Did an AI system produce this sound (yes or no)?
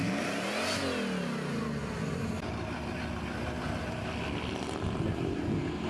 no